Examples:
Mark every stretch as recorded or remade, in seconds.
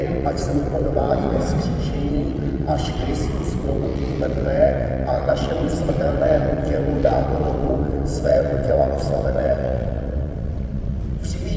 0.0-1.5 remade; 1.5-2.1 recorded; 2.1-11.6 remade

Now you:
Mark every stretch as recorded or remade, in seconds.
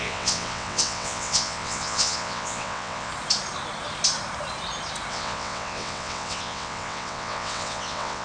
0.0-3.1 remade; 3.1-5.1 recorded; 5.1-8.2 remade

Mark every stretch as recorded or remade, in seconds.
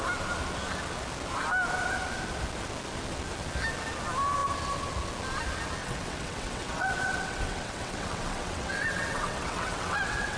0.0-5.8 recorded; 5.8-10.4 remade